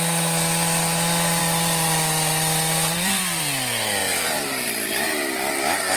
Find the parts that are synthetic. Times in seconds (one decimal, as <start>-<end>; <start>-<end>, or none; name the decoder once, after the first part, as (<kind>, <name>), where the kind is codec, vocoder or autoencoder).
1.4-3.4 (vocoder, BigVGAN v2); 4.0-4.8